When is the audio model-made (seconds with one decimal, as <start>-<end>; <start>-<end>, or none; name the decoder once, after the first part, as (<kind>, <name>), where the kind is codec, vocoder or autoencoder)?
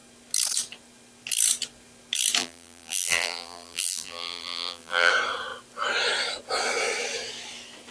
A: 2.4-5.1 (vocoder, BigVGAN v2)